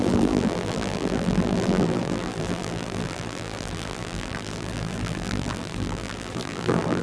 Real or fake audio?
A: fake